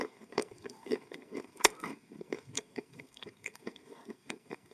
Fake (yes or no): yes